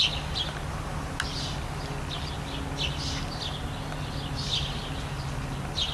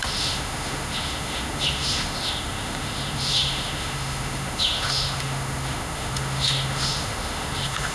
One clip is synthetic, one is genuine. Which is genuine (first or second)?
first